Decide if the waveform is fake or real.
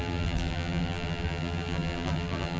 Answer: fake